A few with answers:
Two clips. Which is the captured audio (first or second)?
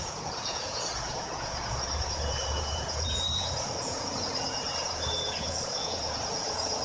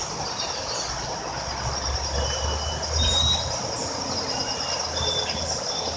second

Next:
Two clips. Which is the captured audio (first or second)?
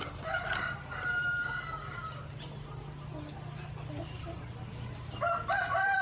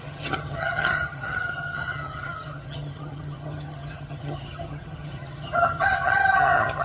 first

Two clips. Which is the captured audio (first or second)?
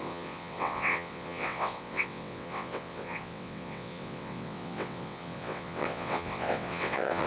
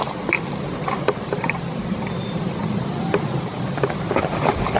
second